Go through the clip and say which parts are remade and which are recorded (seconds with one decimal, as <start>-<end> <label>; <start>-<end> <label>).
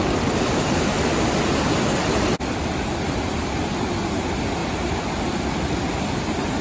0.0-6.6 recorded